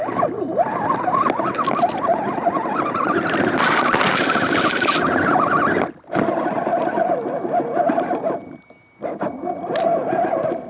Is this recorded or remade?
recorded